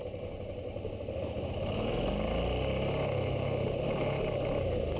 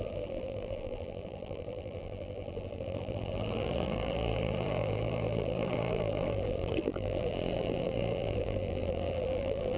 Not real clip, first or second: second